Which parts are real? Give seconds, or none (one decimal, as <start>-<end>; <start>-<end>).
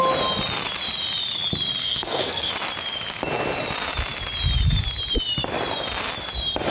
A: 0.0-1.8; 2.5-6.7